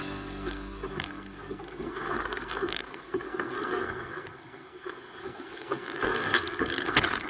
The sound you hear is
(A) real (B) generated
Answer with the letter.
B